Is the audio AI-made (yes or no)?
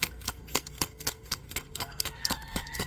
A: yes